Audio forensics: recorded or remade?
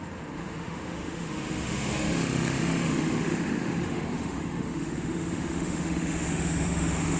remade